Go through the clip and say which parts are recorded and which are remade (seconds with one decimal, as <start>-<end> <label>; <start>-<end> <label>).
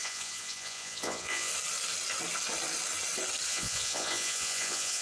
0.0-1.5 remade; 1.5-3.5 recorded; 3.5-5.0 remade